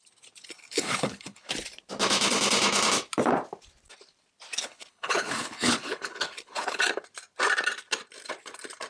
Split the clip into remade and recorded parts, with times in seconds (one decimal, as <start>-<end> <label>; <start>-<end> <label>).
0.0-0.5 recorded; 0.5-1.5 remade; 1.5-4.6 recorded; 4.6-6.8 remade; 6.8-8.9 recorded